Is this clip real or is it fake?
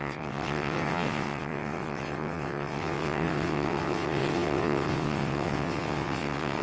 fake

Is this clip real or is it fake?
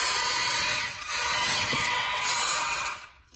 fake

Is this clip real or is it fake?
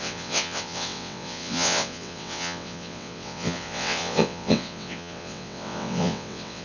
fake